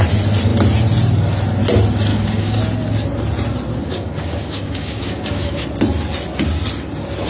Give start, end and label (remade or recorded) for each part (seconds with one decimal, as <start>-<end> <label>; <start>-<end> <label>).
0.0-2.1 recorded; 2.1-2.6 remade; 2.6-3.8 recorded; 3.8-5.6 remade; 5.6-7.3 recorded